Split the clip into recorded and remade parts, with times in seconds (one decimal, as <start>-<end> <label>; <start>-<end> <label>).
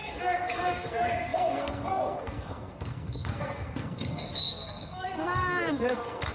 0.0-6.3 remade